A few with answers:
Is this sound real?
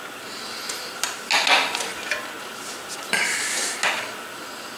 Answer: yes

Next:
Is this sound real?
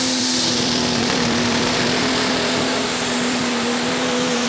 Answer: no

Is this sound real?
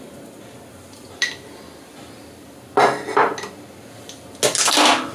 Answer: yes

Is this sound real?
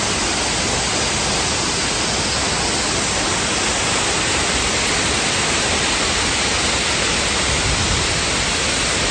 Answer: yes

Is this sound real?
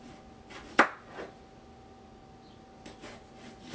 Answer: yes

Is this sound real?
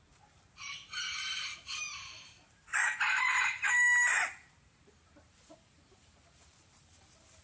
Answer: no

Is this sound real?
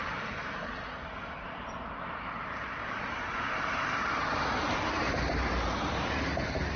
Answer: no